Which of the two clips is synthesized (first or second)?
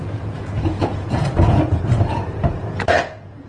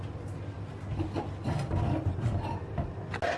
first